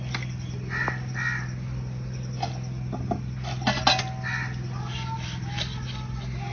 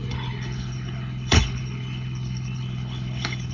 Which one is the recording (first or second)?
first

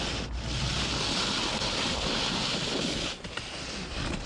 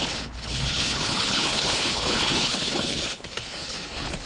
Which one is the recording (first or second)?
first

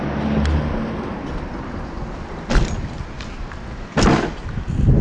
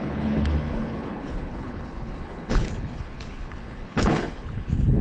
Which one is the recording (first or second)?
first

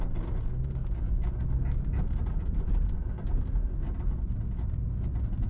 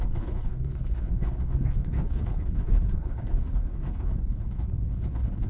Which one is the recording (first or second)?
first